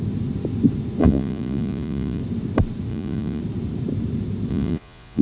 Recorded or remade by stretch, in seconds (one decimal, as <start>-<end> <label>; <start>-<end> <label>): 0.0-1.0 recorded; 1.0-2.2 remade; 2.2-2.9 recorded; 2.9-3.4 remade; 3.4-4.5 recorded; 4.5-5.2 remade